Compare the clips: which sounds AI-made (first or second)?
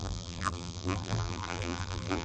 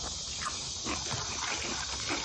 first